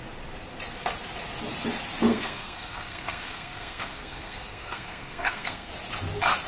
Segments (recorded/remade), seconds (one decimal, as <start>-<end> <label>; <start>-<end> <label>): 0.0-2.1 recorded; 2.1-5.7 remade; 5.7-6.5 recorded